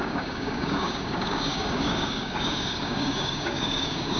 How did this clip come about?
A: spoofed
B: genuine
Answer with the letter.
A